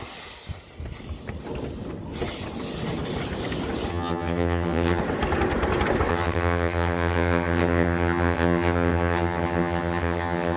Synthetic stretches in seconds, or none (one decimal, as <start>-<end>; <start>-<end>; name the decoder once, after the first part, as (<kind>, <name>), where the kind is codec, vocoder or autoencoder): 3.9-5.0 (vocoder, HiFi-GAN); 6.1-10.6